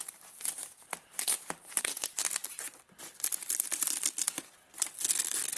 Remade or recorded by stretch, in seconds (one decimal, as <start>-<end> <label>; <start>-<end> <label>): 0.0-2.2 remade; 2.2-5.6 recorded